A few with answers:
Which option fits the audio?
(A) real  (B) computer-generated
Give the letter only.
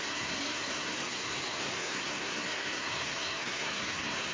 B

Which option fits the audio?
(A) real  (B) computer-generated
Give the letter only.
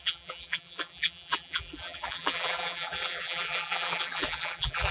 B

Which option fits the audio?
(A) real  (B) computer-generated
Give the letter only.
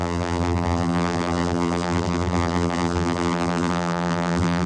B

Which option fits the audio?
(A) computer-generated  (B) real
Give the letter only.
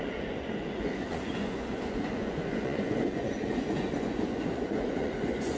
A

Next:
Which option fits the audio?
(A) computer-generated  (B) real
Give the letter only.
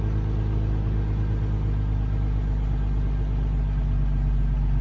B